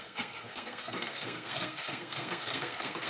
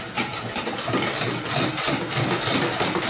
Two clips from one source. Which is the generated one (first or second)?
first